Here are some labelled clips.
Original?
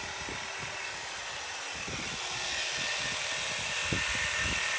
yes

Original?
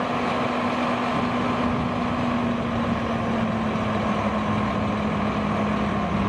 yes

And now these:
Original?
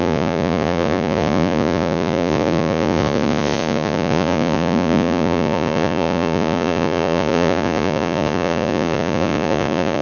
no